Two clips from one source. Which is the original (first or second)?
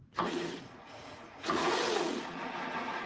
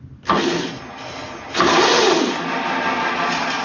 second